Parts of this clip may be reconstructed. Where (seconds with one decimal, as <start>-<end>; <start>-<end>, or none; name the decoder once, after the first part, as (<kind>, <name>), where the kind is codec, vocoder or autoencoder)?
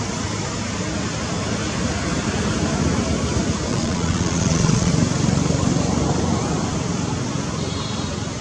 3.7-4.9 (vocoder, Vocos)